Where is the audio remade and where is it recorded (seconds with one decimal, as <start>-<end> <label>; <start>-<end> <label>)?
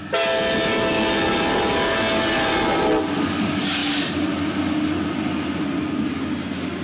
0.0-6.8 recorded